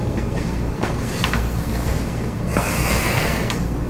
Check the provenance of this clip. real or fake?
fake